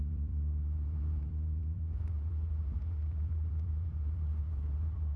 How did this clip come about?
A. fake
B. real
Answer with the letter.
A